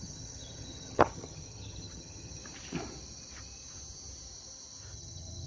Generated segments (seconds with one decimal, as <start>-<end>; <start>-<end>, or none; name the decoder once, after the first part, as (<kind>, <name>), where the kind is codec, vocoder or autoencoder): 0.0-2.4 (vocoder, HiFi-GAN); 4.8-5.5